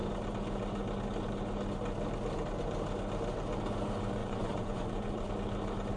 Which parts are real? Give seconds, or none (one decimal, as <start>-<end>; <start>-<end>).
0.0-4.2; 5.3-6.0